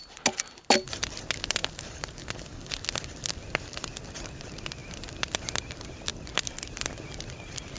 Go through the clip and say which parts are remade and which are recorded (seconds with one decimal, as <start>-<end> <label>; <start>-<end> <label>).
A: 0.0-1.6 recorded; 1.6-2.3 remade; 2.3-7.8 recorded